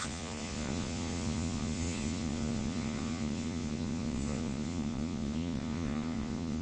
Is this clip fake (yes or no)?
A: yes